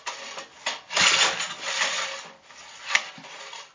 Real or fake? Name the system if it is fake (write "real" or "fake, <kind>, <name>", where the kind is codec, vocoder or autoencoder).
real